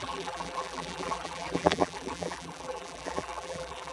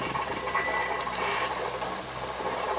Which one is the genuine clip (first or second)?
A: second